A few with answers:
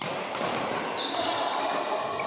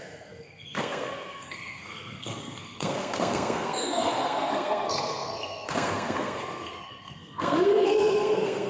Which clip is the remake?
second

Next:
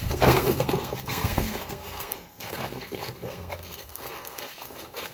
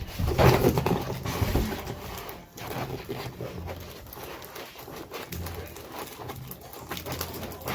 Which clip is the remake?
first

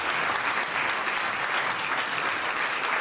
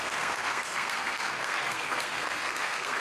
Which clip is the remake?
second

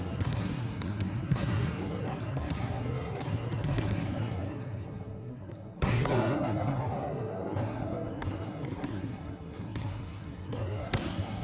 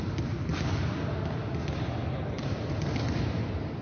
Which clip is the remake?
first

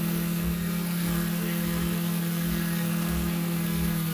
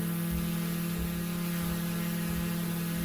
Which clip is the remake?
first